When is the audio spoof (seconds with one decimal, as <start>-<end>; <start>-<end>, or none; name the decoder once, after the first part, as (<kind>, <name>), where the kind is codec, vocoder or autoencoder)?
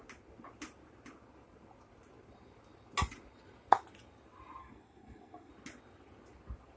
4.6-5.5 (codec, SNAC)